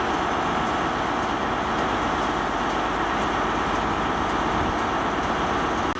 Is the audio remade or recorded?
recorded